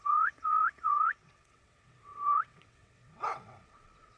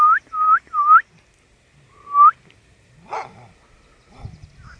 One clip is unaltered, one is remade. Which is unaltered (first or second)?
second